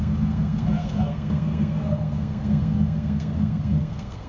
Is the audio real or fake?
fake